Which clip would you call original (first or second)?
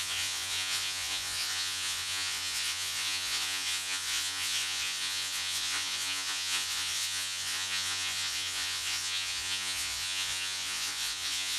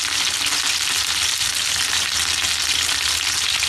second